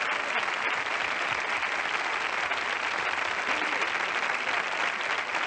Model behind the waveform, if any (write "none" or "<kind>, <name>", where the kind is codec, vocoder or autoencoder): none